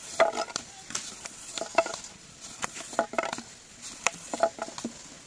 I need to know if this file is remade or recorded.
recorded